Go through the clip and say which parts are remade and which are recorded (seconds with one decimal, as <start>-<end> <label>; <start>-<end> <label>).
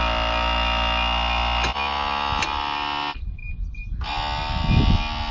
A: 0.0-5.3 recorded